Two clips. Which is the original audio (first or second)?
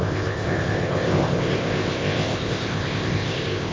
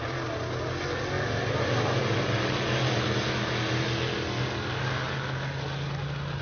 second